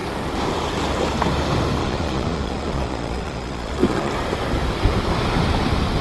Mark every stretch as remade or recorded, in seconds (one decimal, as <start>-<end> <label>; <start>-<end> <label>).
0.0-1.8 recorded; 1.8-4.1 remade; 4.1-6.0 recorded